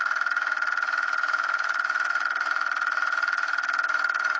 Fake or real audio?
fake